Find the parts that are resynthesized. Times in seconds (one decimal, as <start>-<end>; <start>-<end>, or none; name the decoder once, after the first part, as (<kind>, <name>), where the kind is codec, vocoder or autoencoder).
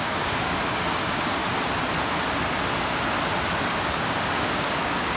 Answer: 0.0-1.4 (codec, DAC); 3.6-5.2